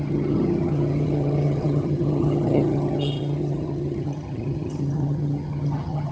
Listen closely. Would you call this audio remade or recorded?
remade